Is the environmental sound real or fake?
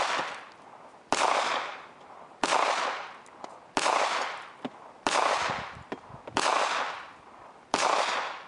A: real